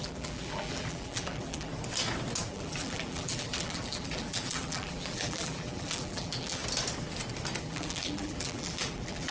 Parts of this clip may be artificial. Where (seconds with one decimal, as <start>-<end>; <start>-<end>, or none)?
0.0-1.7; 2.4-6.6; 7.6-9.3